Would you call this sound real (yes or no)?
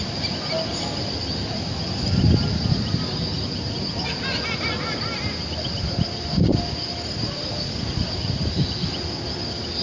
yes